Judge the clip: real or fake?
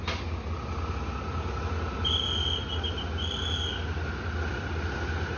real